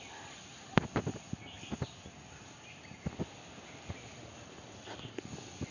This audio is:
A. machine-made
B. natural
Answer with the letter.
B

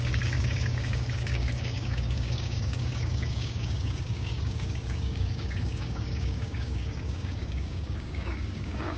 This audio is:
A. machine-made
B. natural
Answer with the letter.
A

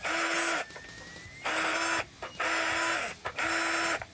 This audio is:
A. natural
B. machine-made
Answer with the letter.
A